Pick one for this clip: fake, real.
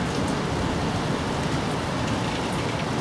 real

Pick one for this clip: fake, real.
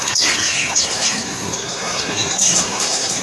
fake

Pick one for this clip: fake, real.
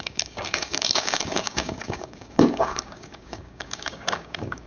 fake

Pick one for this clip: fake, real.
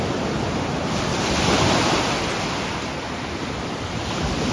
real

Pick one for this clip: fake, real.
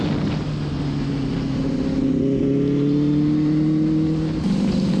real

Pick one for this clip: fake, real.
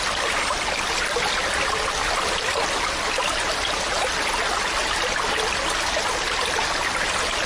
real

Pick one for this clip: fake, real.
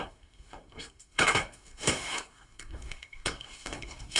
fake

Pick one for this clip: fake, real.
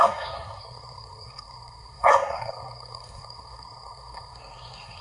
fake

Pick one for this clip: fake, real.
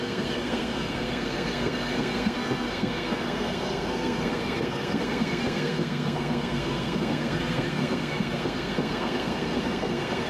fake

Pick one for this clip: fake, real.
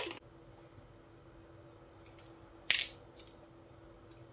real